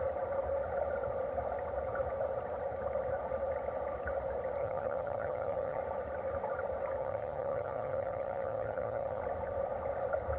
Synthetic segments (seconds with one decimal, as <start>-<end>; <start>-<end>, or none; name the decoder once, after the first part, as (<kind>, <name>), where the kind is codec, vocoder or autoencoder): 4.6-5.8 (vocoder, HiFi-GAN); 7.0-9.2